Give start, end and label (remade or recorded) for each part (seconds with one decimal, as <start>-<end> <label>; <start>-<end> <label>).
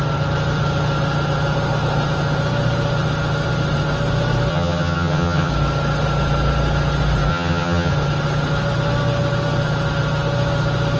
0.0-4.5 recorded; 4.5-5.5 remade; 5.5-7.3 recorded; 7.3-7.9 remade; 7.9-11.0 recorded